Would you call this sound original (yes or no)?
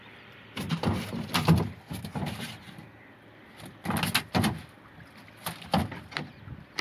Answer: yes